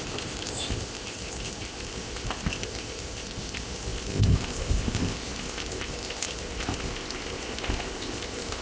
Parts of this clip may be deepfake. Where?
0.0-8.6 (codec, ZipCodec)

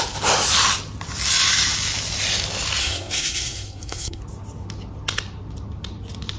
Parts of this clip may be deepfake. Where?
2.8-4.2 (codec, SNAC)

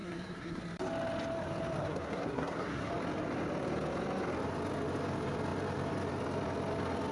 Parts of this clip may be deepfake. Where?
0.0-0.6 (codec, SNAC); 1.8-2.9

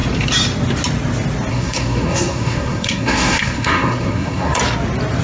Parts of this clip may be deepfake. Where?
1.5-4.6 (codec, SNAC)

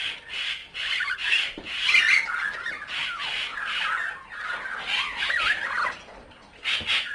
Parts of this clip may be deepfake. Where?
0.6-2.0 (vocoder, BigVGAN v2)

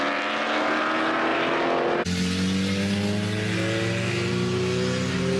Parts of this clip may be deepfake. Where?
none

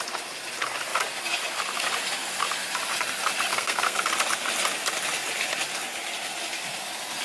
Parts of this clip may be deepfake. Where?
3.5-4.0 (codec, SNAC)

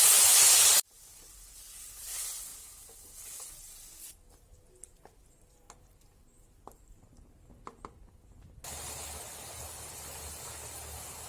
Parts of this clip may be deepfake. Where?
none